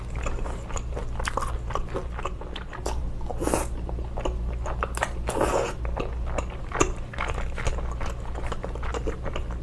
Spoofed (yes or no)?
no